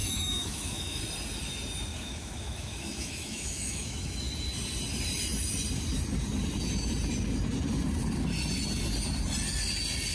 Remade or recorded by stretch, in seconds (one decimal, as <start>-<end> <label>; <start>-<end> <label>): 0.0-1.0 remade; 1.0-1.9 recorded; 1.9-4.2 remade; 4.2-10.1 recorded